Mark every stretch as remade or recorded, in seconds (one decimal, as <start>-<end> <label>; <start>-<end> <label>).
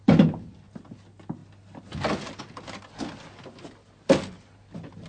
0.0-5.1 recorded